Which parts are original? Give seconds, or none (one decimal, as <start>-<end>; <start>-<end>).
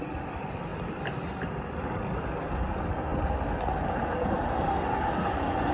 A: 0.0-5.7